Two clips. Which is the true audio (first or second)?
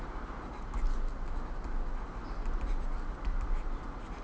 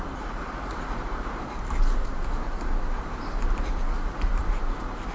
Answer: first